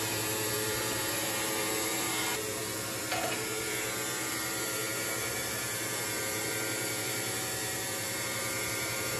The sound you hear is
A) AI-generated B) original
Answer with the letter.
A